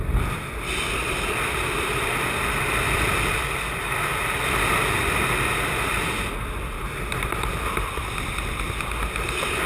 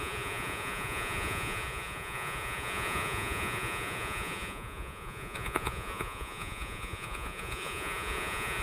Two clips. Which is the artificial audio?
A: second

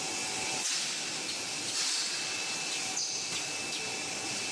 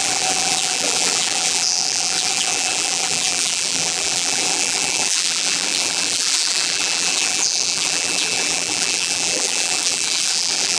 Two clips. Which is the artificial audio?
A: second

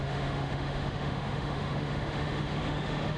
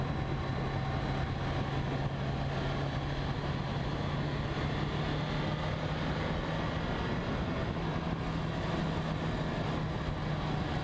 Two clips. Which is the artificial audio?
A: first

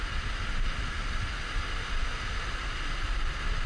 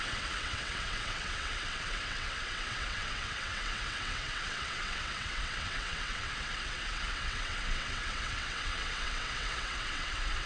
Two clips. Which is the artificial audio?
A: second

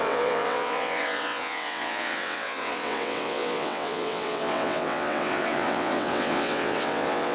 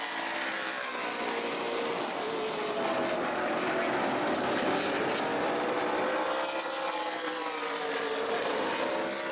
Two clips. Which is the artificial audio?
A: first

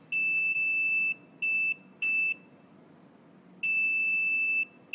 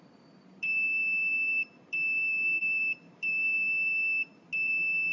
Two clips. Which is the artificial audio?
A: second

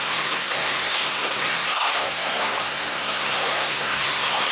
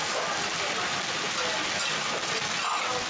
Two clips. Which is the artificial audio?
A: first